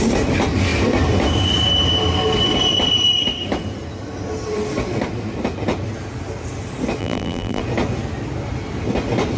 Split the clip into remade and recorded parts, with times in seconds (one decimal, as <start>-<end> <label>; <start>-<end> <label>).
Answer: 0.0-7.0 recorded; 7.0-7.6 remade; 7.6-9.4 recorded